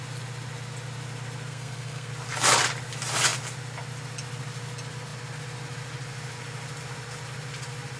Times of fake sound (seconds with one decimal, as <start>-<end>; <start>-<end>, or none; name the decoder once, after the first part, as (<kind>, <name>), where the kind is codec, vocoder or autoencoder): 1.5-2.1 (codec, SNAC)